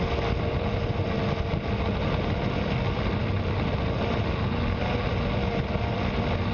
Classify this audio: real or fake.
real